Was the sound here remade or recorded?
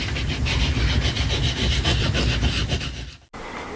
recorded